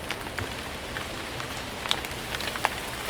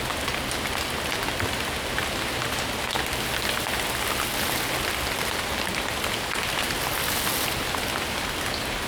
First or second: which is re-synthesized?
first